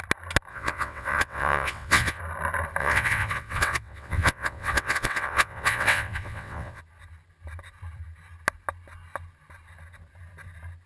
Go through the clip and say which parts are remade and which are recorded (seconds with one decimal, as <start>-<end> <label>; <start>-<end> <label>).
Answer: 0.0-0.5 recorded; 0.5-2.2 remade; 2.2-2.8 recorded; 2.8-6.8 remade; 6.8-10.9 recorded

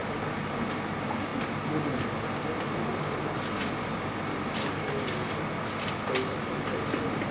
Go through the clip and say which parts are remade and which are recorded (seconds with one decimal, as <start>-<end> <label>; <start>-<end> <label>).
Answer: 0.0-7.3 recorded

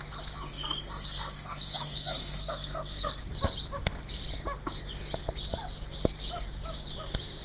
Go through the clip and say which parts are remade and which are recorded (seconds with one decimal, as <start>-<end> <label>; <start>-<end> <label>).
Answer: 0.0-0.5 recorded; 0.5-3.3 remade; 3.3-7.4 recorded

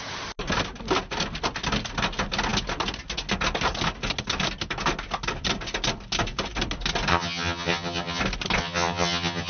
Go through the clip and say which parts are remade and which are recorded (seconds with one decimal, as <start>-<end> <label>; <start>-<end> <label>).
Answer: 0.0-7.1 recorded; 7.1-8.2 remade; 8.2-8.6 recorded; 8.6-9.5 remade

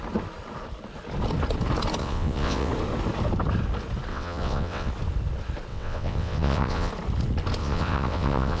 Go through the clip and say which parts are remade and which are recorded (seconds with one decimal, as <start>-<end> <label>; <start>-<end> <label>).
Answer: 0.0-2.0 recorded; 2.0-2.7 remade; 2.7-4.1 recorded; 4.1-4.9 remade; 4.9-5.7 recorded; 5.7-6.9 remade; 6.9-7.6 recorded; 7.6-8.6 remade

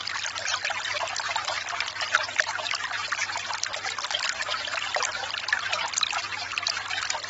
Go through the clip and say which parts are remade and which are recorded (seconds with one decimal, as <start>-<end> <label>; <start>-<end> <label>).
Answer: 0.0-7.3 recorded